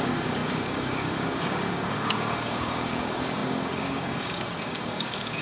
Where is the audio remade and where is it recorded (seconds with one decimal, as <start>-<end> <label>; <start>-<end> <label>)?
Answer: 0.0-5.4 remade